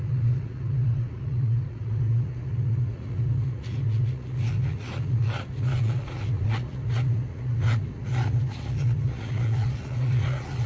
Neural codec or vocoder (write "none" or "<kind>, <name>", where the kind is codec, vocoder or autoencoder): vocoder, Vocos